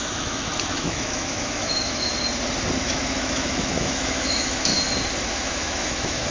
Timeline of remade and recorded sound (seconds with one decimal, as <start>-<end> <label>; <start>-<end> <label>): 0.0-2.1 remade; 2.1-2.8 recorded; 2.8-4.7 remade; 4.7-5.3 recorded; 5.3-6.3 remade